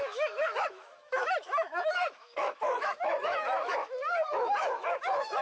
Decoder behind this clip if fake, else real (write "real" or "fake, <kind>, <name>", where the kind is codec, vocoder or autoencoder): fake, autoencoder, DAC-VAE